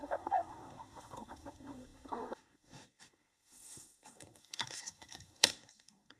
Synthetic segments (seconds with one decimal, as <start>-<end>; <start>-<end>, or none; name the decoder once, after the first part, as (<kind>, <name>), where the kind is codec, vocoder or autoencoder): 0.0-6.2 (codec, SNAC)